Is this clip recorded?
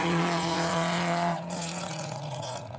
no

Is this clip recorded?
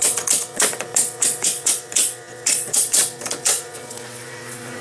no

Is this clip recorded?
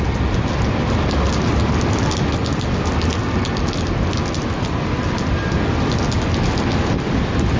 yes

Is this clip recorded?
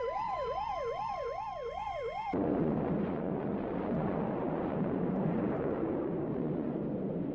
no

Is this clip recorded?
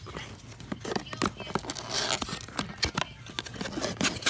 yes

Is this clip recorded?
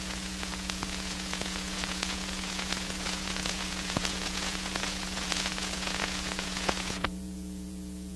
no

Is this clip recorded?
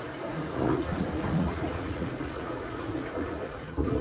no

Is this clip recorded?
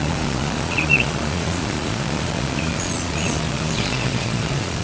no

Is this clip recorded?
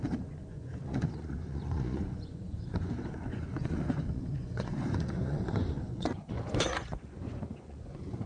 no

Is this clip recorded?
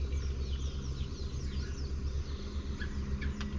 yes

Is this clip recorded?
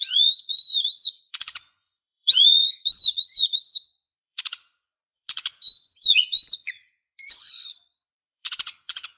no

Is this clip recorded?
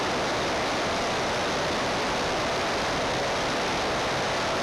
yes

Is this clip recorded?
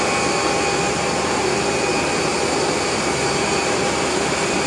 yes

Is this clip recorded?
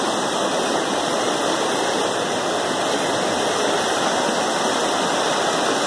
yes